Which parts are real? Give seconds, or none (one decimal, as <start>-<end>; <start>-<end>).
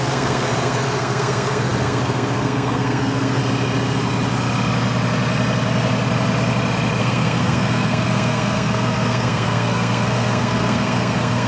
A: 3.4-7.0